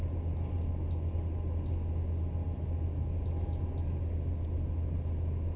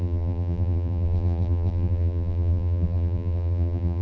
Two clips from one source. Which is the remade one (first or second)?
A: second